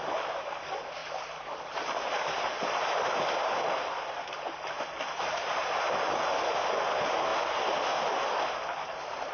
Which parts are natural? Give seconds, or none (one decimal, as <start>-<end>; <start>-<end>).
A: 7.3-8.5

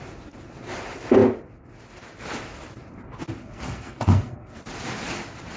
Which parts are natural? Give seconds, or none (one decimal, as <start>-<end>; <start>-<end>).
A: 0.0-3.4; 4.6-5.6